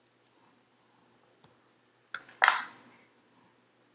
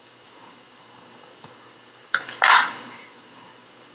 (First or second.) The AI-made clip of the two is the second